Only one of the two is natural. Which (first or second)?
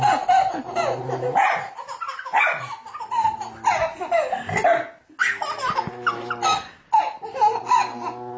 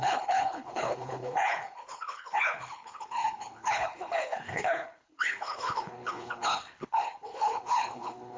first